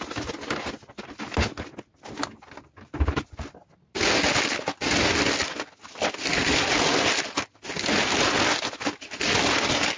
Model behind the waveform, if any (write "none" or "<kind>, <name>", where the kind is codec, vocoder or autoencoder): none